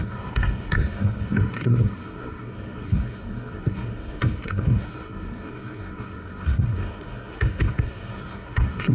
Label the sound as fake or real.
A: fake